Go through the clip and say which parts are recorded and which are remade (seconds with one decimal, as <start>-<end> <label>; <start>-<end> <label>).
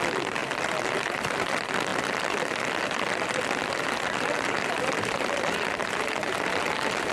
0.0-0.4 recorded; 0.4-1.4 remade; 1.4-7.1 recorded